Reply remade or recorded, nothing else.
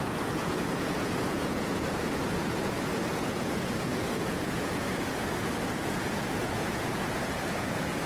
remade